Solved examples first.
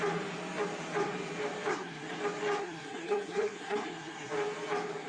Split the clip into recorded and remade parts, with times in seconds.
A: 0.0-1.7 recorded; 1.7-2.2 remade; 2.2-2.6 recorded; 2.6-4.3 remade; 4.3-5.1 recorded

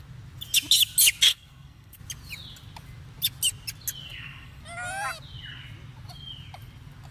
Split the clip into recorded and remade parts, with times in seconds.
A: 0.0-1.3 recorded; 1.3-2.0 remade; 2.0-4.0 recorded; 4.0-4.6 remade; 4.6-7.1 recorded

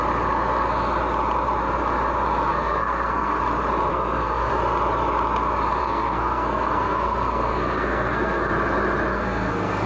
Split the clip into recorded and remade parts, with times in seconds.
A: 0.0-2.5 recorded; 2.5-3.4 remade; 3.4-3.9 recorded; 3.9-4.5 remade; 4.5-5.8 recorded; 5.8-8.5 remade; 8.5-9.1 recorded; 9.1-9.9 remade

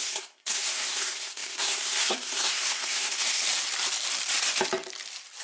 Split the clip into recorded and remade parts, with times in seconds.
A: 0.0-3.4 remade; 3.4-5.4 recorded

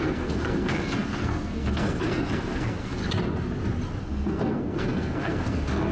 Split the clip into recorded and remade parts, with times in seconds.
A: 0.0-3.0 remade; 3.0-4.0 recorded; 4.0-5.9 remade

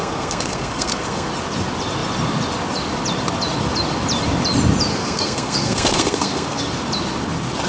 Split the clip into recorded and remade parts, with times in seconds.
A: 0.0-1.3 remade; 1.3-4.9 recorded; 4.9-6.6 remade; 6.6-7.7 recorded